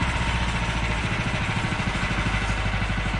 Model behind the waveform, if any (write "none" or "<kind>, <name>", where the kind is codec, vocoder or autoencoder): none